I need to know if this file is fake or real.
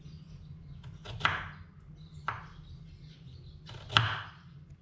real